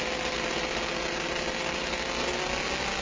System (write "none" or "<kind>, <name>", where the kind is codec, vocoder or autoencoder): none